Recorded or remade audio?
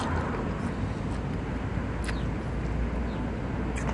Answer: recorded